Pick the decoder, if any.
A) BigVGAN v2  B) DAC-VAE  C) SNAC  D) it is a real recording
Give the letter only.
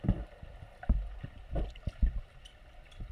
A